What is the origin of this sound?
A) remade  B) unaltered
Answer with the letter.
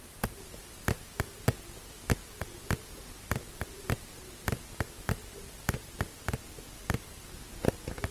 B